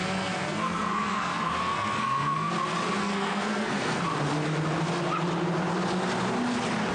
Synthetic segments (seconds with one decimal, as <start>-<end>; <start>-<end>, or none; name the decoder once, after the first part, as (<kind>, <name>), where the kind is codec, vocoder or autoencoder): 0.0-2.5 (codec, SNAC); 3.0-4.0